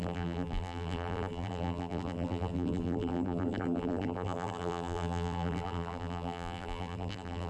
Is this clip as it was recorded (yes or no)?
no